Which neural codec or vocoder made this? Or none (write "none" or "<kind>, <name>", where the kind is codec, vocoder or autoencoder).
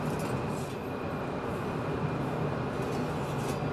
none